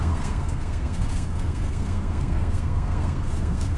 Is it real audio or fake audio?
fake